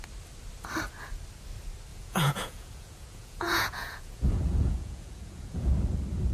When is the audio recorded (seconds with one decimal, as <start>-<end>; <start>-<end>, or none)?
0.0-1.9; 5.7-6.3